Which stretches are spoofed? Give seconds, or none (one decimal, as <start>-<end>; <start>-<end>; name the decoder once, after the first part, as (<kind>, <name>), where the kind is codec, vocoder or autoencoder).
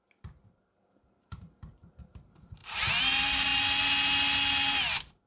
0.0-2.6 (vocoder, BigVGAN v2); 3.1-3.5